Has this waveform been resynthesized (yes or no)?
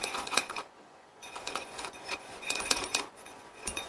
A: yes